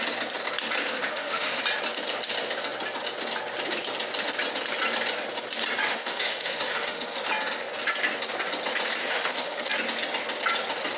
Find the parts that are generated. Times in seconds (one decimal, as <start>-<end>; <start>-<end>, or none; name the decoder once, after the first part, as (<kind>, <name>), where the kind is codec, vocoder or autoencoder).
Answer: 0.8-1.6 (autoencoder, DAC-VAE); 5.9-7.2; 9.0-9.7